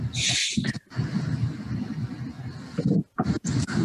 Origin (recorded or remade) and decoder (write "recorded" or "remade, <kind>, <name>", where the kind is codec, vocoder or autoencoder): recorded